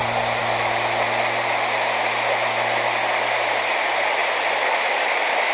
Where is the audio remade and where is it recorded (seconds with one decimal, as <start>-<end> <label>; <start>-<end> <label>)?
0.0-5.5 recorded